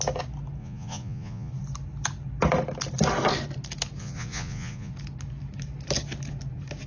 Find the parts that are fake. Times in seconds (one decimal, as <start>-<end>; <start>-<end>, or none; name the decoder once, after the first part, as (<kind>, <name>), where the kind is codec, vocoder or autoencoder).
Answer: 0.6-1.5 (vocoder, Vocos); 4.0-4.9